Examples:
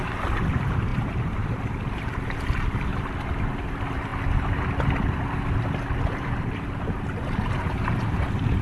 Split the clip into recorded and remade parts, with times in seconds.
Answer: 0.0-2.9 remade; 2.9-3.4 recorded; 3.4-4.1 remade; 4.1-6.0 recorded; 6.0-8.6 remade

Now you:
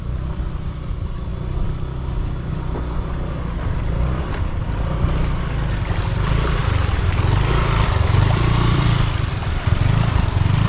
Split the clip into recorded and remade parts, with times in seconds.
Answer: 0.0-1.3 remade; 1.3-4.2 recorded; 4.2-6.6 remade; 6.6-7.5 recorded; 7.5-10.7 remade